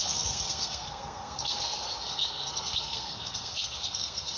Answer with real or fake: fake